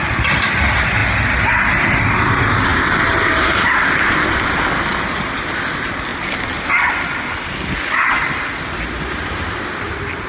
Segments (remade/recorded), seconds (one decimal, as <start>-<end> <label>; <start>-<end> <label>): 0.0-10.3 recorded